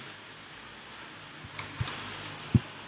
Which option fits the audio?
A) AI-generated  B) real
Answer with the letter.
B